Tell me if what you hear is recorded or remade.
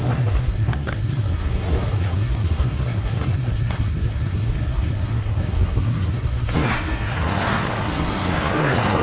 remade